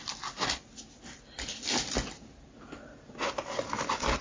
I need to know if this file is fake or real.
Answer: real